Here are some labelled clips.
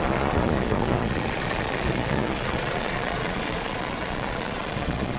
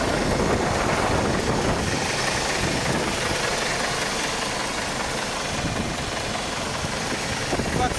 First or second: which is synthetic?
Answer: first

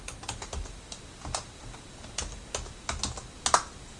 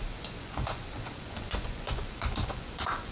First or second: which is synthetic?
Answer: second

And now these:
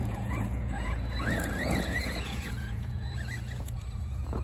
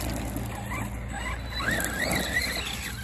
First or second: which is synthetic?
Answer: first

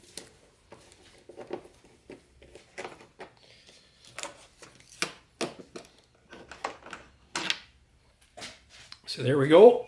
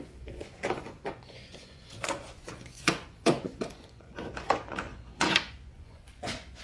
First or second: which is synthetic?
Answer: second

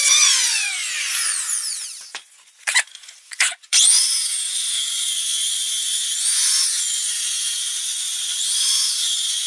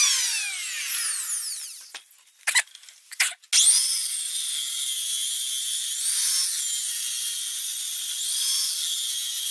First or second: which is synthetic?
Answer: first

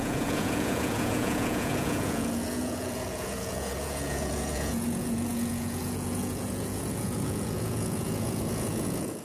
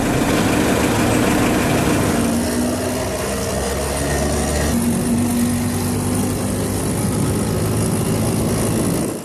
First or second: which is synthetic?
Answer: first